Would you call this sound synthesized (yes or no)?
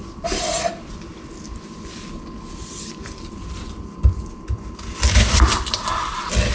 yes